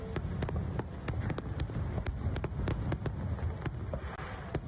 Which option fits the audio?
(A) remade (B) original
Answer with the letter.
B